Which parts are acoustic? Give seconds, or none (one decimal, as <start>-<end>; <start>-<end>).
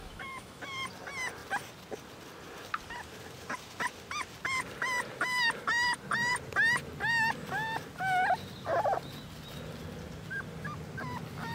0.6-11.5